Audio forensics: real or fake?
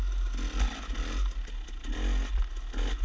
real